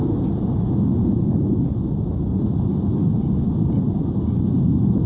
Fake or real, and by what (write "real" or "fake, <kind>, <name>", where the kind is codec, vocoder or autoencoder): real